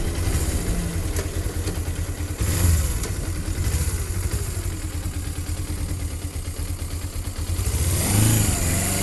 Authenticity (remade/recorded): recorded